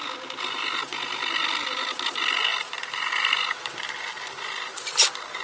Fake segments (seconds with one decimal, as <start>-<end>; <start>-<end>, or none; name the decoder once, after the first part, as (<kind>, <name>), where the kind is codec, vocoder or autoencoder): 2.5-4.8 (vocoder, BigVGAN v2)